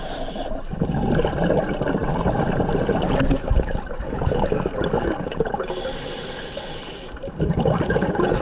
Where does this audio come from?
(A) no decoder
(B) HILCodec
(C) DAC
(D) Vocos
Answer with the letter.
A